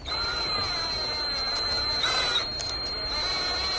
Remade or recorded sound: recorded